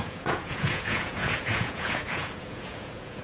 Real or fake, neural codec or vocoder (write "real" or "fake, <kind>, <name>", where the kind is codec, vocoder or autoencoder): fake, vocoder, Vocos